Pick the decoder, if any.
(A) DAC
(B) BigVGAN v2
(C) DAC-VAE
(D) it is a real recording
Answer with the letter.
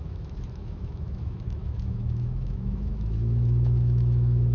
C